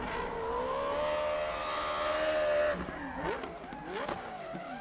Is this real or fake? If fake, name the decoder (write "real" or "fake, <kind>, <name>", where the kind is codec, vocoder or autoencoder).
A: real